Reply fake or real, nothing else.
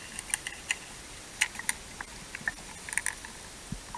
real